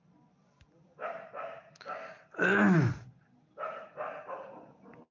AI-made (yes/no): no